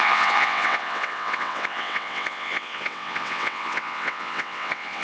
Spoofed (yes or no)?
yes